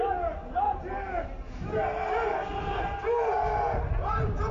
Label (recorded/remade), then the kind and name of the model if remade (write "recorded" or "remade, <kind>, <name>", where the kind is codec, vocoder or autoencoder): recorded